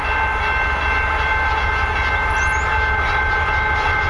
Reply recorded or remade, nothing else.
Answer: recorded